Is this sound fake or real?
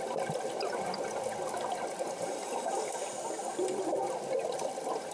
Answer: real